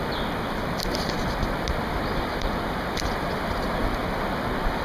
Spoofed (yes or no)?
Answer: no